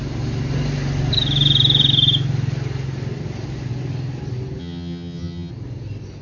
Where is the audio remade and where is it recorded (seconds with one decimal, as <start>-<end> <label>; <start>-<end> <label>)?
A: 0.0-4.6 recorded; 4.6-5.5 remade; 5.5-6.2 recorded